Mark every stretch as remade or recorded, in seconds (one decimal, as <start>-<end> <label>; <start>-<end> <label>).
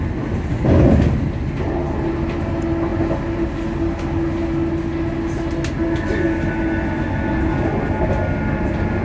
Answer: 0.0-9.0 recorded